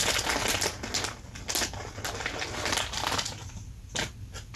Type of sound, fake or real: real